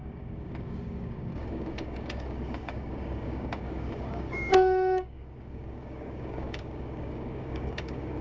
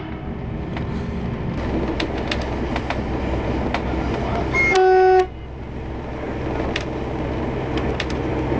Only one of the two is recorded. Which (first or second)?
second